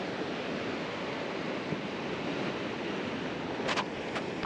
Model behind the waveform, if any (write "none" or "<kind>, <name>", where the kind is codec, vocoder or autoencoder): none